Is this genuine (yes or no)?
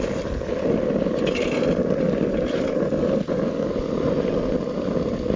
yes